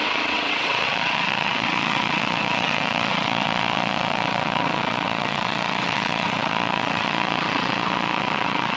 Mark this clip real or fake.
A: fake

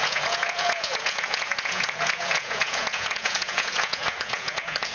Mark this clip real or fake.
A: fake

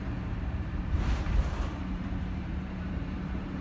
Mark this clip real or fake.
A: fake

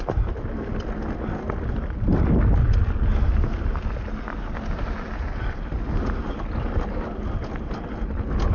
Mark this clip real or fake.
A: real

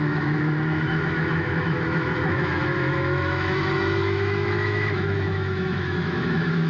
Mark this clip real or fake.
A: fake